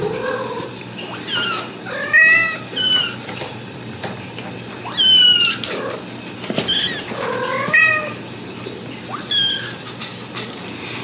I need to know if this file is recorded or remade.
recorded